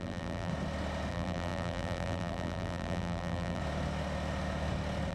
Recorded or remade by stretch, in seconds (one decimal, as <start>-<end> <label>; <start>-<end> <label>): 0.0-0.5 remade; 0.5-1.1 recorded; 1.1-3.6 remade; 3.6-5.1 recorded